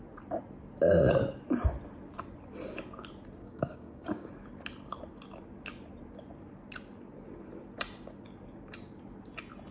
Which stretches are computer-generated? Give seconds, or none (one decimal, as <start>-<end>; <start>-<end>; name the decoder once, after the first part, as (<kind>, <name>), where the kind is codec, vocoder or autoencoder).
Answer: 3.4-4.3 (codec, DAC)

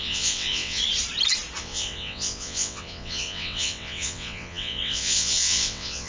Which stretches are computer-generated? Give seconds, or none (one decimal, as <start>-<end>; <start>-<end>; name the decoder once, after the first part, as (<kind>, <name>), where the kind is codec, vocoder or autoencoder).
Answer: 0.0-0.8 (vocoder, WaveNeXt); 1.6-6.1

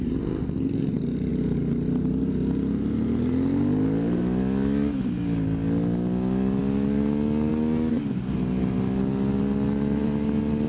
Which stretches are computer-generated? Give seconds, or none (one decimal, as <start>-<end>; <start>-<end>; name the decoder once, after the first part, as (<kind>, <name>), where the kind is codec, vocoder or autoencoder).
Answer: none

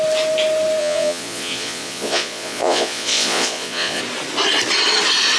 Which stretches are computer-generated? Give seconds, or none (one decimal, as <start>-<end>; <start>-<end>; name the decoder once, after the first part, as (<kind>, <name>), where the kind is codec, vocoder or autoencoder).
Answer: 0.8-4.0 (vocoder, Vocos)

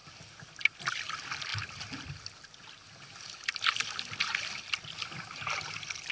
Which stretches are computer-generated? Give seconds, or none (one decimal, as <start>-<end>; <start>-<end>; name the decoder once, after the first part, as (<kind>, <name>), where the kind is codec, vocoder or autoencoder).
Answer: none